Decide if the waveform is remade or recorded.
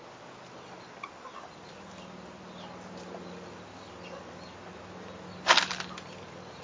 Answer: recorded